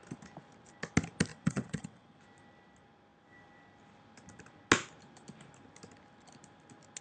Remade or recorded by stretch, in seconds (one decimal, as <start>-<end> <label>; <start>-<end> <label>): 0.0-1.3 recorded; 1.3-2.2 remade; 2.2-7.0 recorded